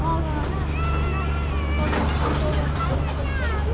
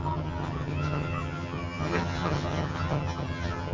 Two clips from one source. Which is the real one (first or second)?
first